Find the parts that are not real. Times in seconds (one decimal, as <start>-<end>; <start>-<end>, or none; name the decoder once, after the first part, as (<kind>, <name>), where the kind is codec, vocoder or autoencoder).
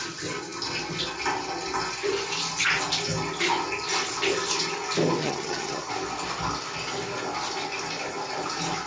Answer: 5.2-5.9 (vocoder, HiFi-GAN)